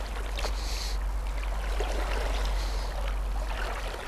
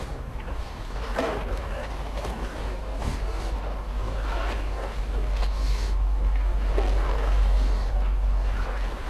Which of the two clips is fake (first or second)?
second